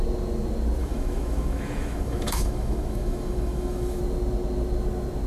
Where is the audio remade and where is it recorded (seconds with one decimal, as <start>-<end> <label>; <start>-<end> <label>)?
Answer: 0.0-0.8 recorded; 0.8-4.0 remade; 4.0-5.3 recorded